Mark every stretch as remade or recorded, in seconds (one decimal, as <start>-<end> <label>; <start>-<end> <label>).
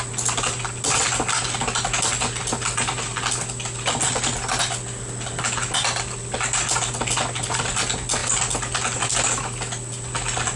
0.0-10.6 recorded